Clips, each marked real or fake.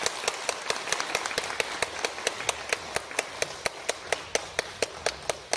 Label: real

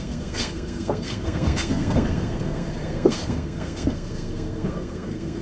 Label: fake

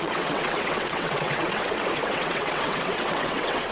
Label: fake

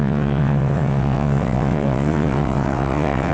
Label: fake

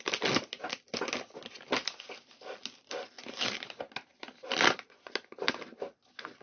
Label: real